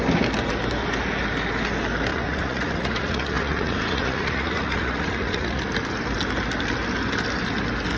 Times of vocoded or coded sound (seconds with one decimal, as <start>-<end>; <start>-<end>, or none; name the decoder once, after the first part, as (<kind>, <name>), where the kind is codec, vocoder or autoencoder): 2.1-5.6 (vocoder, Vocos)